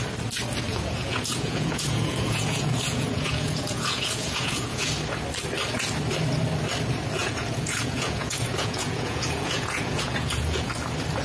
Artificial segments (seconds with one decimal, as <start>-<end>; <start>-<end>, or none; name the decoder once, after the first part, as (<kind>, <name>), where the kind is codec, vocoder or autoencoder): 0.7-4.9 (vocoder, Vocos); 7.2-10.7